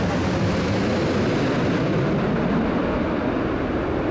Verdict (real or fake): real